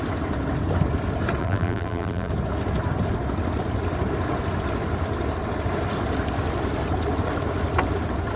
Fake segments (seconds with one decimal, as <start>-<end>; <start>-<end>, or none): 1.4-2.3